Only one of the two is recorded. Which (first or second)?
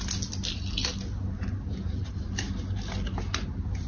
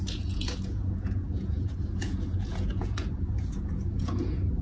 first